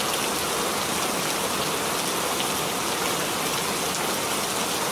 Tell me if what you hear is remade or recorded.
recorded